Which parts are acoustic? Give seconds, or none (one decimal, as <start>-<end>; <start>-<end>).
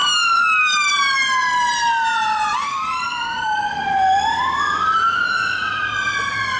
0.0-0.6